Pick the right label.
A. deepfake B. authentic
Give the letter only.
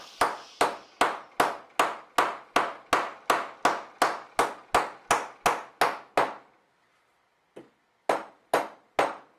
B